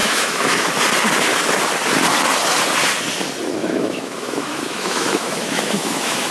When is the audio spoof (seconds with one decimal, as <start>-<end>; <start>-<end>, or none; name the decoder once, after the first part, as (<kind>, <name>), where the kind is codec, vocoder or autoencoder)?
0.0-0.7 (autoencoder, DAC-VAE); 3.6-6.3